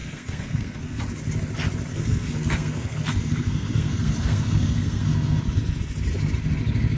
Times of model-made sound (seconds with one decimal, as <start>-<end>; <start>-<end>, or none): 0.0-1.0; 1.9-5.4